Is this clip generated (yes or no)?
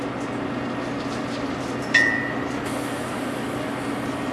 no